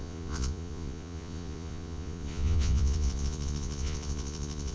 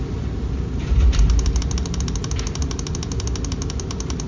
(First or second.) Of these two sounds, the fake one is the first